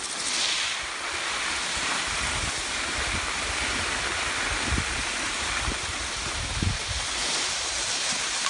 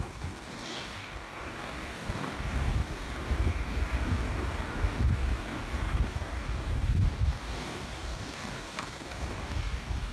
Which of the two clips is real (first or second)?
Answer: first